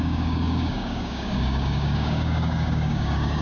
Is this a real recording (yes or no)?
no